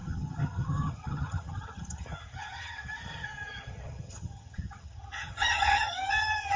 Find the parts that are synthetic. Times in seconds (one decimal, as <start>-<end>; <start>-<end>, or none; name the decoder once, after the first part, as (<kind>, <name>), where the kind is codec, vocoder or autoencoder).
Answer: 0.0-6.6 (vocoder, HiFi-GAN)